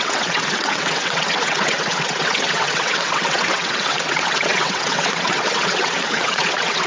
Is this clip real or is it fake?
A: fake